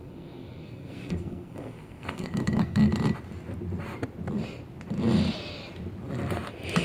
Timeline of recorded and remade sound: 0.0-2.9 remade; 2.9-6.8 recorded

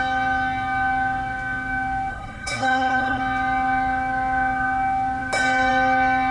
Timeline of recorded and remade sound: 0.0-2.1 recorded; 2.1-3.2 remade; 3.2-6.3 recorded

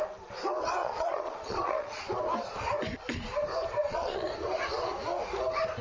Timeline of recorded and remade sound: 0.0-0.8 recorded; 0.8-2.0 remade; 2.0-3.8 recorded; 3.8-4.3 remade; 4.3-5.8 recorded